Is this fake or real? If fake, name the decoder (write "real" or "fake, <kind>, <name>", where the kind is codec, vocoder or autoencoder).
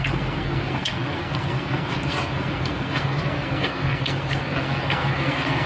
fake, codec, SNAC